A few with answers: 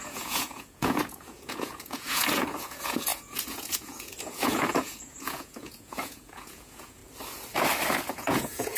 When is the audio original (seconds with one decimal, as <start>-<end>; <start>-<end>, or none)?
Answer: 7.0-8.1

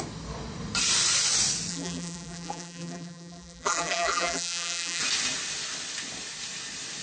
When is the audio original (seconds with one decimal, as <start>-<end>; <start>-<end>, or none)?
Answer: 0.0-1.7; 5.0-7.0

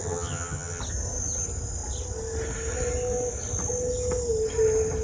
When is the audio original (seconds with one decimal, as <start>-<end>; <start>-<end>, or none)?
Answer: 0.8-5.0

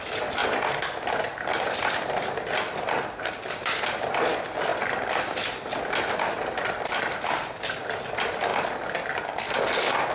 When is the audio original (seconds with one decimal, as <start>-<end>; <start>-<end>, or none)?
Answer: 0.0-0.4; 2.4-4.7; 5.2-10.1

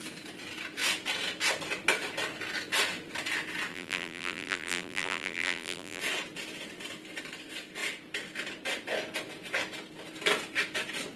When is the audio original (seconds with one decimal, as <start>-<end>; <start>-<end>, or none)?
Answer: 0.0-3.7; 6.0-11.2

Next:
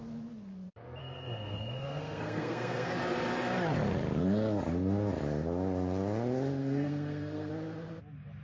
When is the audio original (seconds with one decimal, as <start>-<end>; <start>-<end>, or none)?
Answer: 0.0-1.0; 2.9-6.6; 7.5-8.4

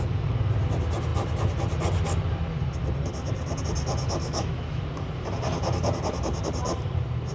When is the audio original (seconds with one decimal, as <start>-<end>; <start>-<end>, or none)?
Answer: 0.0-4.2; 4.8-7.3